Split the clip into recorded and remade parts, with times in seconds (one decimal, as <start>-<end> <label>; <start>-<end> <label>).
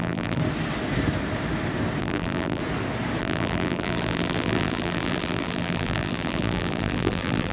0.0-0.4 remade; 0.4-2.0 recorded; 2.0-2.6 remade; 2.6-3.2 recorded; 3.2-7.5 remade